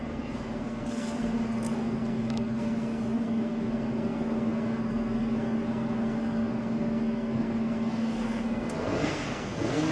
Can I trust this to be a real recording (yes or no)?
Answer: no